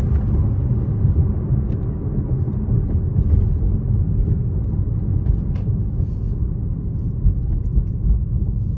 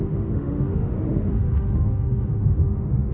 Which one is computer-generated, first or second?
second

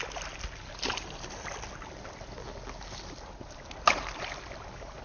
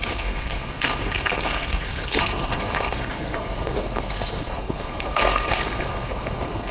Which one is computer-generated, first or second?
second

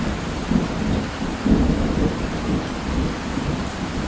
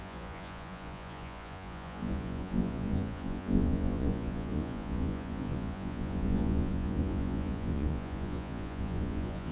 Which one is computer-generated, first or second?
second